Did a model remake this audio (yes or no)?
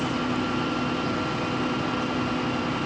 no